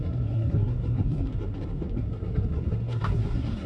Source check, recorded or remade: remade